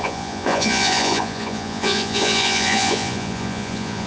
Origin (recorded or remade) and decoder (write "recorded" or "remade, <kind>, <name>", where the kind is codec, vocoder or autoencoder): remade, vocoder, Vocos